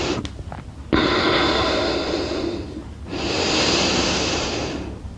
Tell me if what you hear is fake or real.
real